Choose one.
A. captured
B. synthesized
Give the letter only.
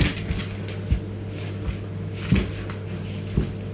A